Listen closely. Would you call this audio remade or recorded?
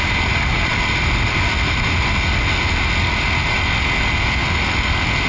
recorded